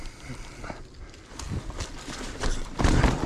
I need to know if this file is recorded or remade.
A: recorded